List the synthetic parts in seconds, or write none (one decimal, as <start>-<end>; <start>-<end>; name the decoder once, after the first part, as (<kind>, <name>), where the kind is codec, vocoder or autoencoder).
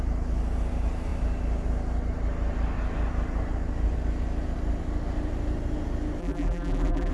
6.2-7.1 (vocoder, BigVGAN v2)